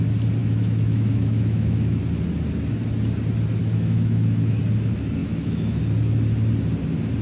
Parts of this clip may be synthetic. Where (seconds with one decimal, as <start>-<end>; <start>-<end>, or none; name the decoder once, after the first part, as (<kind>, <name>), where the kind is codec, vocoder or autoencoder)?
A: 0.4-2.0 (autoencoder, DAC-VAE); 3.6-4.6; 5.2-5.8